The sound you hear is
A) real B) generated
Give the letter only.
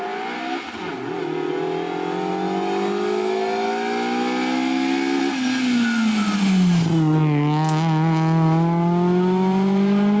A